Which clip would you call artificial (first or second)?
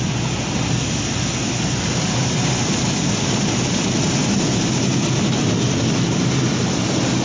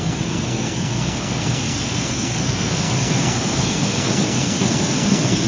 second